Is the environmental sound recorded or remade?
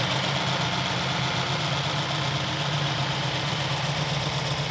remade